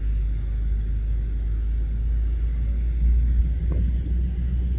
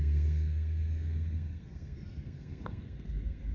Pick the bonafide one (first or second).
first